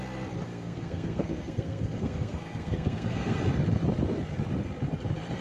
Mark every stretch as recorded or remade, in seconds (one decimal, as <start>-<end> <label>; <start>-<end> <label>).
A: 0.0-0.5 recorded; 0.5-3.4 remade; 3.4-5.4 recorded